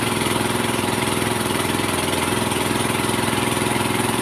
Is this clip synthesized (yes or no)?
yes